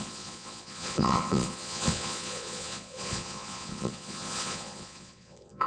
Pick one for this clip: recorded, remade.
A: remade